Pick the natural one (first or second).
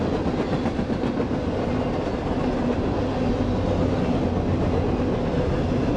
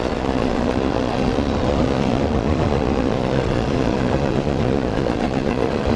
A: first